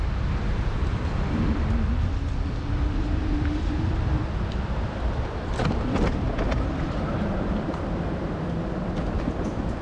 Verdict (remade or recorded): remade